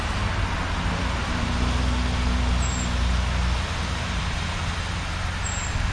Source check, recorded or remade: recorded